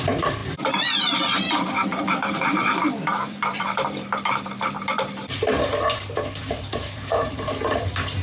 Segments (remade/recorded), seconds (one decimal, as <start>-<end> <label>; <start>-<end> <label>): 0.0-8.2 remade